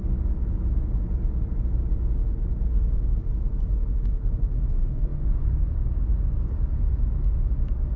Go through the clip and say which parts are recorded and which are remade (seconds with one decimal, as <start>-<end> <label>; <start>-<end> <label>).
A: 0.0-8.0 recorded